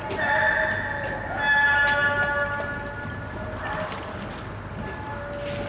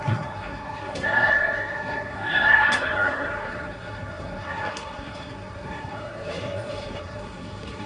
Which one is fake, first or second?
second